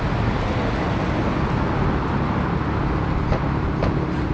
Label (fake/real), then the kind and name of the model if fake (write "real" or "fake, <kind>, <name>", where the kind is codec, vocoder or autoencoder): real